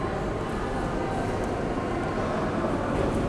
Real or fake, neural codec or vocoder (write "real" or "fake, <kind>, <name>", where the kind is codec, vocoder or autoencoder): real